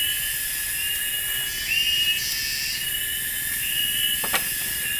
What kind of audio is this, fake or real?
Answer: real